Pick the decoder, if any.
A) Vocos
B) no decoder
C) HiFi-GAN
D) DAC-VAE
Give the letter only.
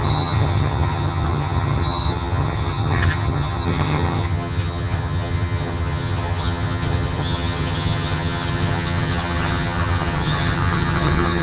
C